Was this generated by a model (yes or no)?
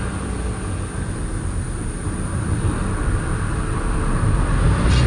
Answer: no